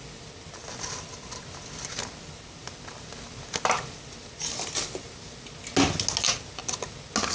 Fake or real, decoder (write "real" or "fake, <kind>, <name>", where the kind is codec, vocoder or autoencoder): real